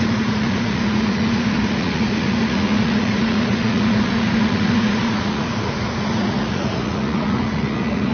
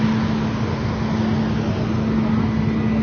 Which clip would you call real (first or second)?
second